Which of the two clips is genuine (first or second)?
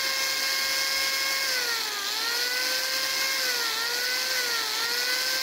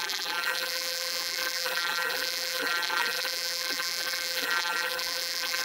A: first